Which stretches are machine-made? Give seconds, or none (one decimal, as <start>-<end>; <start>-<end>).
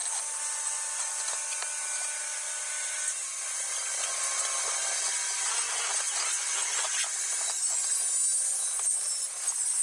none